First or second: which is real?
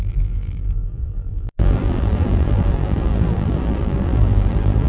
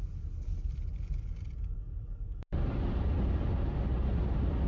second